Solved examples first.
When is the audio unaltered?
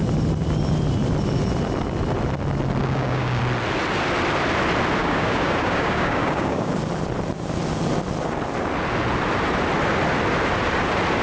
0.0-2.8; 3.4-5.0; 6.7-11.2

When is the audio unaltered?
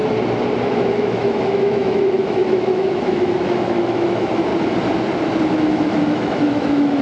0.0-0.6; 4.5-5.5